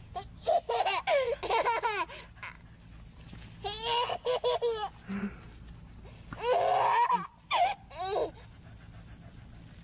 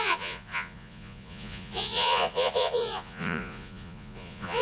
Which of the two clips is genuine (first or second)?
first